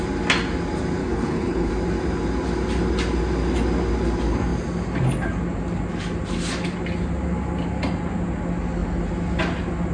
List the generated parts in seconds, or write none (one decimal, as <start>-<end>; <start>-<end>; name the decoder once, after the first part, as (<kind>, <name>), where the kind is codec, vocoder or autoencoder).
1.0-1.7 (codec, HILCodec)